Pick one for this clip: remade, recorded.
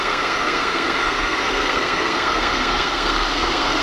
remade